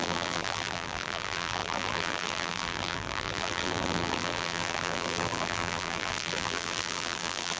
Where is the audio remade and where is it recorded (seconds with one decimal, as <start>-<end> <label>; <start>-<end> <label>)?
0.0-7.6 remade